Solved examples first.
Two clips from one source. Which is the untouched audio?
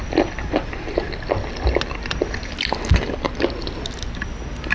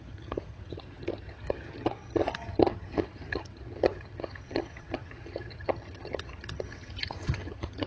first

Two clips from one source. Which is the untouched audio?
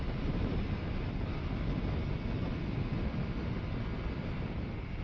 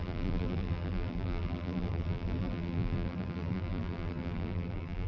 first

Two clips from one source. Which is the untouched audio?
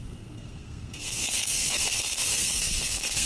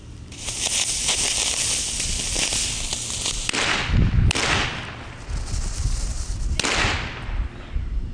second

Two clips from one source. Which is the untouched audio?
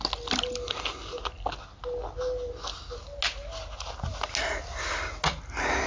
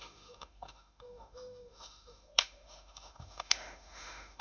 first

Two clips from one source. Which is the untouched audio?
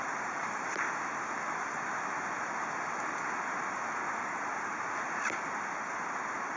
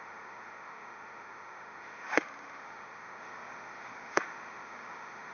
first